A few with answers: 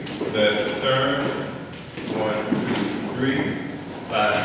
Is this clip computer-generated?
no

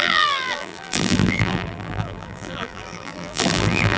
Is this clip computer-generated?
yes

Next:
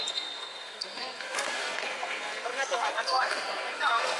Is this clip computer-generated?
yes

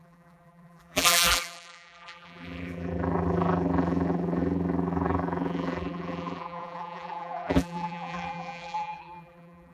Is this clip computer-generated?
yes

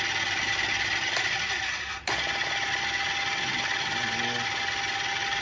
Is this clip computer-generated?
no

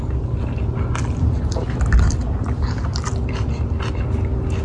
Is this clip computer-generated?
no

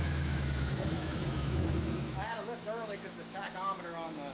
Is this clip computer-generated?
yes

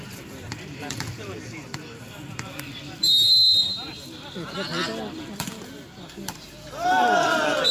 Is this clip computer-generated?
yes